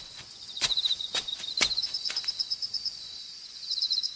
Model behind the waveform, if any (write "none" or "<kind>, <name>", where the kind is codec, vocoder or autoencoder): vocoder, Vocos